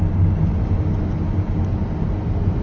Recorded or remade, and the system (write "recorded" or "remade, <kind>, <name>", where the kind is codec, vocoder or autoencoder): recorded